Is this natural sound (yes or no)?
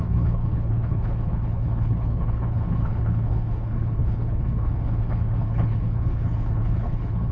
no